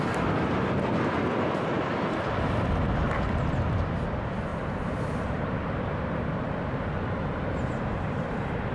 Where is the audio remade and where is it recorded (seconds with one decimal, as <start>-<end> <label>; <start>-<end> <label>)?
0.0-4.5 recorded; 4.5-8.7 remade